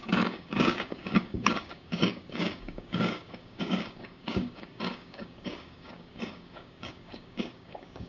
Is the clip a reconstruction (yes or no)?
yes